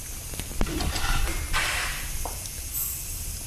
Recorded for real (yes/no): no